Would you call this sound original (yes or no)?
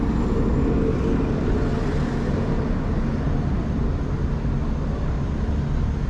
yes